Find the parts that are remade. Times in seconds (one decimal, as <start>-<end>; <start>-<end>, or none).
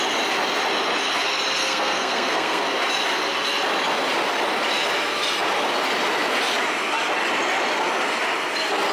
1.6-2.6